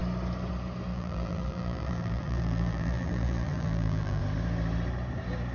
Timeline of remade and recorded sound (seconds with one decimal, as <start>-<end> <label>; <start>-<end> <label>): 0.0-0.9 recorded; 0.9-4.2 remade; 4.2-5.5 recorded